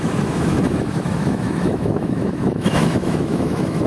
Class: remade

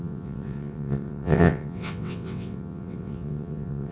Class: remade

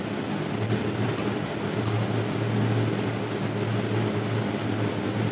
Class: recorded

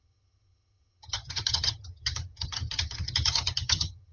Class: remade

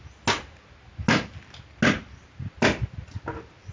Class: recorded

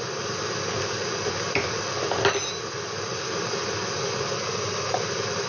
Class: recorded